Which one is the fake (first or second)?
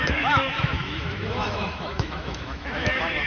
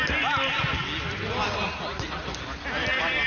first